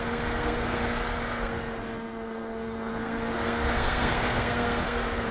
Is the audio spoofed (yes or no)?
yes